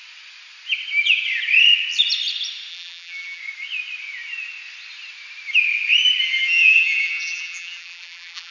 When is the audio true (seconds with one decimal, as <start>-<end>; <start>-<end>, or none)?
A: 0.0-2.7; 3.4-6.2